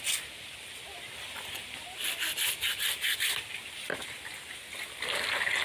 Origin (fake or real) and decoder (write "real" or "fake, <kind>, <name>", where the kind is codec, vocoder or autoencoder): real